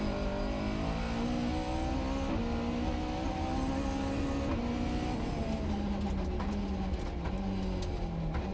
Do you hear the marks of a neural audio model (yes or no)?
no